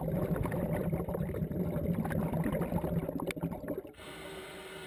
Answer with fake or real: real